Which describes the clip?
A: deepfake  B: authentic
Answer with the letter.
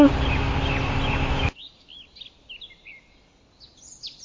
B